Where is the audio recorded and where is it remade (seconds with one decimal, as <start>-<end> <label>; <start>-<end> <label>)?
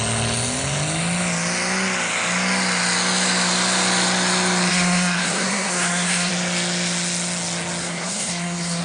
0.0-4.7 recorded; 4.7-6.3 remade; 6.3-7.8 recorded; 7.8-8.8 remade